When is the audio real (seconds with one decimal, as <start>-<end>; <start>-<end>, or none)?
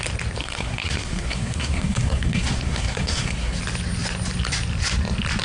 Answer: 0.0-0.4; 3.6-5.4